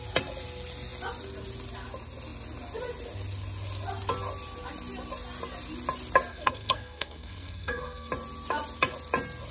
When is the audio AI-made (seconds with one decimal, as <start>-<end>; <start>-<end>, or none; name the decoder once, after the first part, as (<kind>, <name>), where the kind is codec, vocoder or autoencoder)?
6.3-8.1 (codec, SNAC)

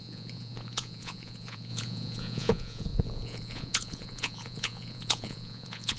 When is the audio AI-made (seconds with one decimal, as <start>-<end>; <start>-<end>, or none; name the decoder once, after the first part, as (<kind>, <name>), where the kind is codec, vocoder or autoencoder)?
0.0-6.0 (vocoder, Vocos)

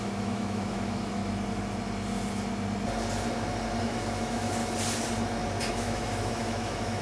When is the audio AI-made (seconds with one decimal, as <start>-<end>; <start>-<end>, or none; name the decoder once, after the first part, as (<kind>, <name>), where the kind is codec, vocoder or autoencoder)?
0.0-1.2 (autoencoder, DAC-VAE); 3.8-4.6; 5.7-7.0

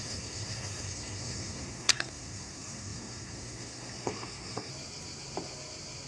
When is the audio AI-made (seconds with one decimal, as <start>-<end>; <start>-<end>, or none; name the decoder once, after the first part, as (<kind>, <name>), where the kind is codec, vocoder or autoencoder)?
0.0-4.7 (codec, SNAC)

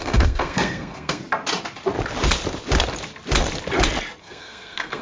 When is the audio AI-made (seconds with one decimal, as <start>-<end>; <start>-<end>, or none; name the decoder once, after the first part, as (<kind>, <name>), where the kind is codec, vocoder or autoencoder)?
0.0-1.2 (codec, SNAC); 4.2-5.0